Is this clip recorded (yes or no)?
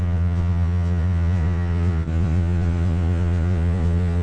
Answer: no